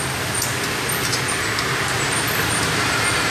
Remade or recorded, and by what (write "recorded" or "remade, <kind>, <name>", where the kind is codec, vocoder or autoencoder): recorded